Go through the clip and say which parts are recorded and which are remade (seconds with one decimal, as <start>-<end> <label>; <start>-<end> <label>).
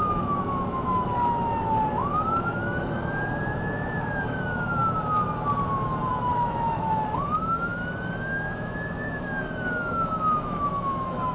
0.0-4.8 remade; 4.8-6.1 recorded; 6.1-11.3 remade